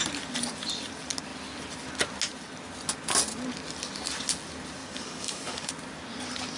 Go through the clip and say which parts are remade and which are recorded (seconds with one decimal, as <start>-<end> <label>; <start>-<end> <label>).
0.0-4.8 recorded; 4.8-5.7 remade; 5.7-6.6 recorded